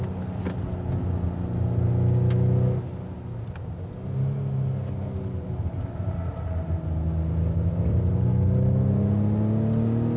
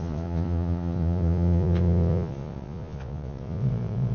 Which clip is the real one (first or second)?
first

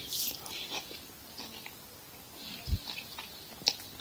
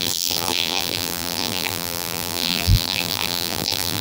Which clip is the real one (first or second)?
first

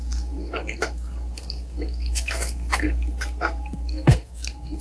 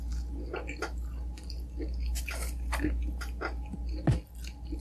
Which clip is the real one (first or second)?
second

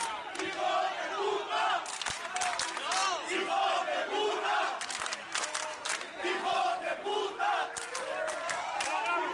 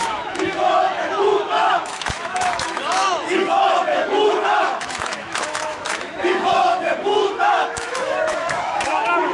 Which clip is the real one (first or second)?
first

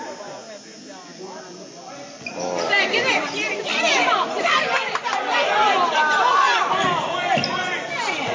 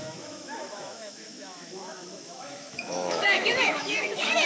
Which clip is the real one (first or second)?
first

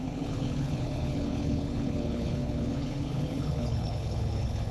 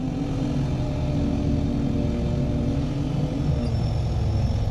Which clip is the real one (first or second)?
second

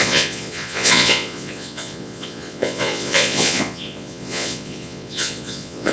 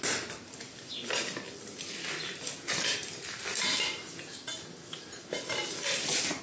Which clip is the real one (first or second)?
second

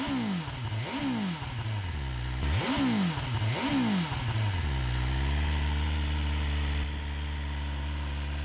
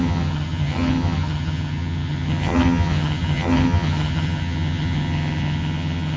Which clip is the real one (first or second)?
first